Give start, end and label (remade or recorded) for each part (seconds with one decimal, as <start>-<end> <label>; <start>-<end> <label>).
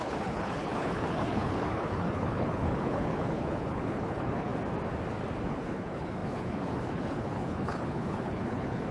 0.0-4.5 remade; 4.5-5.5 recorded; 5.5-8.9 remade